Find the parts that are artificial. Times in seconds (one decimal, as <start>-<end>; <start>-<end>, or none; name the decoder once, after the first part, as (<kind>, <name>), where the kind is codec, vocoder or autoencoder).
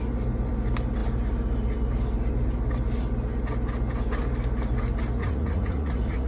5.2-6.3 (vocoder, Vocos)